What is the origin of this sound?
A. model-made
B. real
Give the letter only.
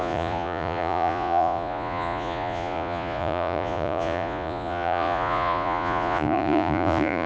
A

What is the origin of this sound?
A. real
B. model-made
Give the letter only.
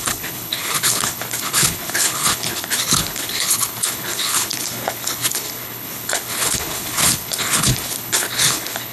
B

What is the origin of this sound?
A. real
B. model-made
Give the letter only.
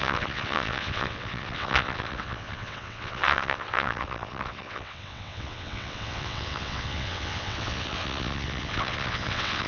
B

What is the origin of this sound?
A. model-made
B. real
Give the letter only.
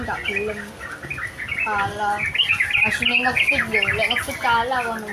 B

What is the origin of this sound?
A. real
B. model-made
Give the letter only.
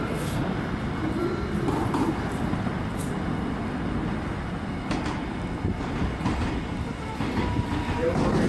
A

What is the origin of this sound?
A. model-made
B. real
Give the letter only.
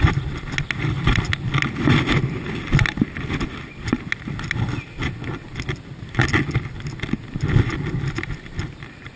B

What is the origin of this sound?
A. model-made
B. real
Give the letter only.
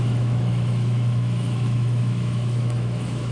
A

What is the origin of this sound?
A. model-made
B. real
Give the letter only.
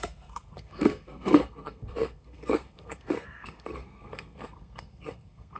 A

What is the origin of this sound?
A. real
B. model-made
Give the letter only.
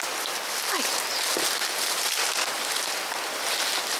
A